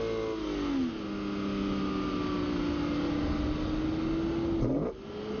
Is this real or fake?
real